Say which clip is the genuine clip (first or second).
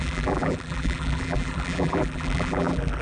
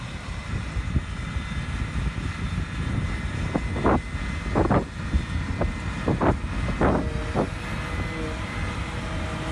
second